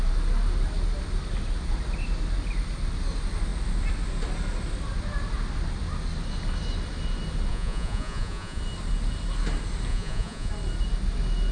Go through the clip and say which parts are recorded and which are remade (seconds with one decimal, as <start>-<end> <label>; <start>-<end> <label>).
0.0-7.5 recorded; 7.5-8.6 remade; 8.6-9.9 recorded; 9.9-10.5 remade; 10.5-11.5 recorded